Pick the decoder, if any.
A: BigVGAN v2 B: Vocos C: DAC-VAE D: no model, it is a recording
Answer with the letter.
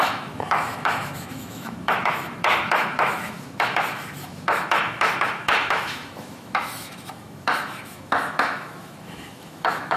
C